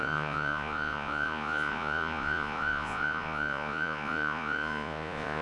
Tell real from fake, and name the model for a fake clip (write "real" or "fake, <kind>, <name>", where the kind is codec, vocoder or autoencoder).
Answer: fake, vocoder, Vocos